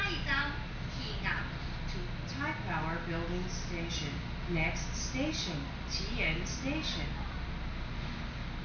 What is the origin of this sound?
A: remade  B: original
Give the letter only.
B